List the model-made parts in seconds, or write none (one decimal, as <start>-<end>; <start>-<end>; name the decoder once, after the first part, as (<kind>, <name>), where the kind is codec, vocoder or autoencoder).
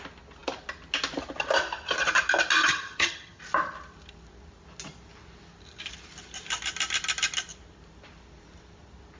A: 2.6-3.4 (vocoder, HiFi-GAN)